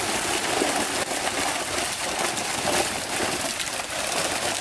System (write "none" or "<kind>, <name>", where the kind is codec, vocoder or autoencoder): none